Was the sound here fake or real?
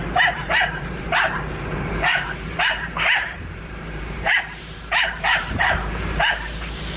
fake